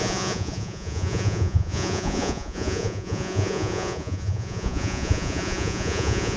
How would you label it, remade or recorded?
remade